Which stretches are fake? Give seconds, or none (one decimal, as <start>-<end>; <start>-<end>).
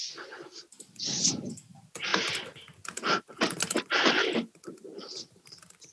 none